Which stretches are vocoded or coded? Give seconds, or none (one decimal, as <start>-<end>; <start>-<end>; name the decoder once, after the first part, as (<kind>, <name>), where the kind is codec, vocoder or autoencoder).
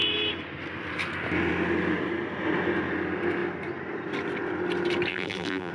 5.1-5.7 (vocoder, BigVGAN v2)